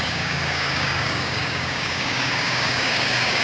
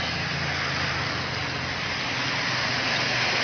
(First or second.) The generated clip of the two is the first